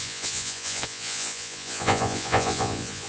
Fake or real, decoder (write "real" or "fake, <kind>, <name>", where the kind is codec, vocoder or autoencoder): fake, vocoder, Vocos